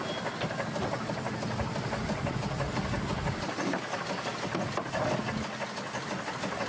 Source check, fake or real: real